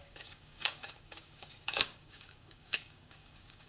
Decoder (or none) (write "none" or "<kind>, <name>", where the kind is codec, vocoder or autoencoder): codec, DAC